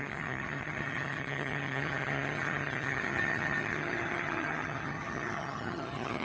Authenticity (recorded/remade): remade